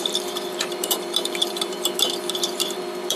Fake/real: fake